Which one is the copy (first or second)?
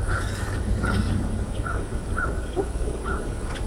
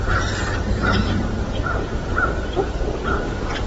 first